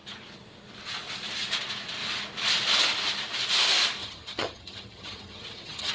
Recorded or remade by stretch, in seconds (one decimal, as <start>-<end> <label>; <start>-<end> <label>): 0.0-4.0 recorded; 4.0-5.9 remade